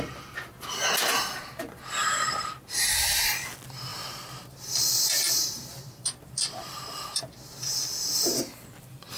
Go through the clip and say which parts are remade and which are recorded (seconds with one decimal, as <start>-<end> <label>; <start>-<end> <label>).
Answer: 0.0-3.9 recorded; 3.9-7.2 remade; 7.2-9.2 recorded